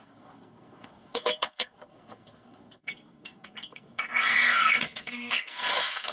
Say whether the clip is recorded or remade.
remade